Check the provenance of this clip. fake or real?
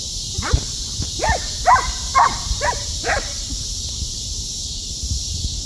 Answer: fake